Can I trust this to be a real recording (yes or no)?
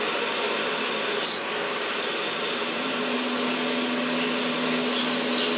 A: yes